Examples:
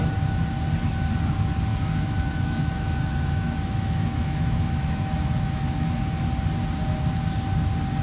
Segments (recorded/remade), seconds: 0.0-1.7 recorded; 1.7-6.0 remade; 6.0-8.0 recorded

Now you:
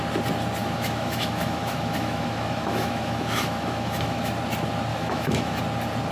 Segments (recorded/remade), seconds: 0.0-0.6 recorded; 0.6-4.3 remade; 4.3-4.9 recorded; 4.9-5.6 remade; 5.6-6.1 recorded